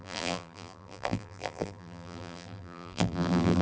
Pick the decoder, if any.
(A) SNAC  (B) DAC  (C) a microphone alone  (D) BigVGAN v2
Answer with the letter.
D